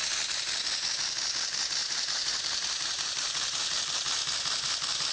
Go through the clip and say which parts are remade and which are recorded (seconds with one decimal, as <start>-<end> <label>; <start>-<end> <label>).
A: 0.0-1.8 recorded; 1.8-3.8 remade; 3.8-5.1 recorded

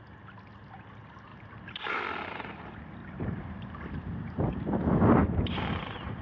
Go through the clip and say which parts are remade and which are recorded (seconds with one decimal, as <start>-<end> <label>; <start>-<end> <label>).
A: 0.0-1.3 recorded; 1.3-2.0 remade; 2.0-3.0 recorded; 3.0-3.7 remade; 3.7-5.2 recorded; 5.2-6.2 remade

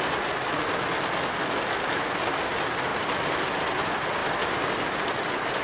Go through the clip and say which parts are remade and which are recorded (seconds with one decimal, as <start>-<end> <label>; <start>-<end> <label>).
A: 0.0-2.9 recorded; 2.9-3.5 remade; 3.5-4.2 recorded; 4.2-4.8 remade; 4.8-5.6 recorded